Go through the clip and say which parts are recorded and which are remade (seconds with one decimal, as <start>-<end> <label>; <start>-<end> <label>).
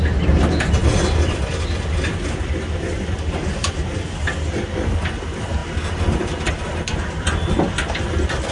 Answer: 0.0-0.8 recorded; 0.8-1.9 remade; 1.9-5.6 recorded; 5.6-6.5 remade; 6.5-8.5 recorded